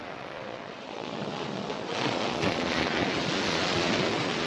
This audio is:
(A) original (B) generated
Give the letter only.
B